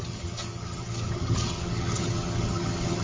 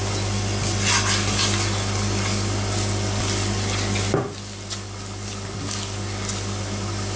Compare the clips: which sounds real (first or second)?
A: second